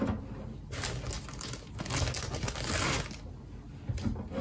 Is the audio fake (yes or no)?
no